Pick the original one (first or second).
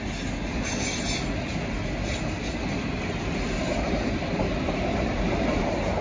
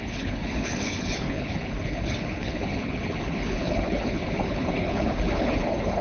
first